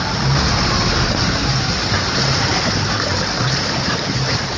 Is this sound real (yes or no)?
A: no